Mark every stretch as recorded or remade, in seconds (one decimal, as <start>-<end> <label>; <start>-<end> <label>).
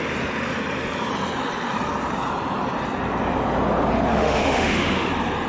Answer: 0.0-4.1 recorded; 4.1-5.1 remade; 5.1-5.5 recorded